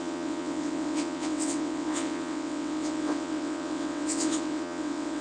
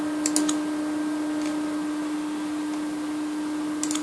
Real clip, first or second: second